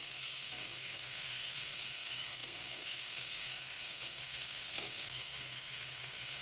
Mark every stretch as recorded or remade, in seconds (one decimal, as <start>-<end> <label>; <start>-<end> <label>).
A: 0.0-6.4 remade